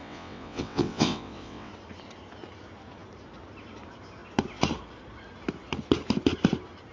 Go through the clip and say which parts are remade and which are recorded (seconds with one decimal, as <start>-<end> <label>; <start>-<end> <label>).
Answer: 0.0-1.7 remade; 1.7-6.9 recorded

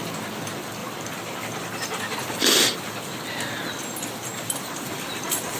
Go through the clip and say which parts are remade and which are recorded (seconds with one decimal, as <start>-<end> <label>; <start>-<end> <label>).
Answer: 0.0-0.8 recorded; 0.8-3.2 remade; 3.2-4.3 recorded; 4.3-5.6 remade

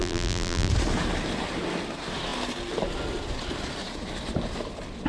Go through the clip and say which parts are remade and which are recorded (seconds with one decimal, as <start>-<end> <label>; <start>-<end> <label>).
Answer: 0.0-0.7 remade; 0.7-5.1 recorded

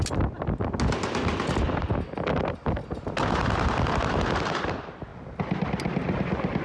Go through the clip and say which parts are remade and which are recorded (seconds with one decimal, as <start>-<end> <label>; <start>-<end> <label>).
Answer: 0.0-6.6 recorded

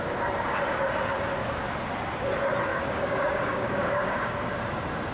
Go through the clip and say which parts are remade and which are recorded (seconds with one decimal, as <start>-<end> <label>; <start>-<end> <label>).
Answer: 0.0-1.4 recorded; 1.4-1.9 remade; 1.9-2.7 recorded; 2.7-4.5 remade; 4.5-5.1 recorded